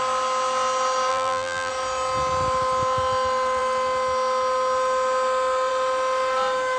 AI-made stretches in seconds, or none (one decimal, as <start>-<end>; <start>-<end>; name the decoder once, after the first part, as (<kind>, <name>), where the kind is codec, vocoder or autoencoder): 1.1-1.7 (vocoder, BigVGAN v2)